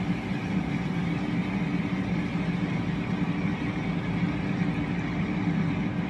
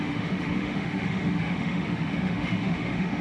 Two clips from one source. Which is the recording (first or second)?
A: first